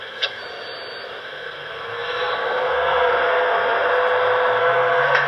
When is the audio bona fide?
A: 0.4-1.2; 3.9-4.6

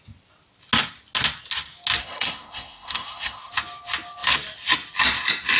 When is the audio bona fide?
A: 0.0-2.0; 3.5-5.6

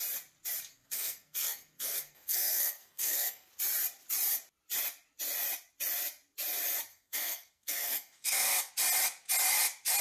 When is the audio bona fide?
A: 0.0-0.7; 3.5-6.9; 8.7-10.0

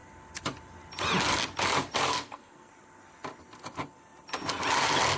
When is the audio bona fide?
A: 0.0-2.1; 2.7-5.2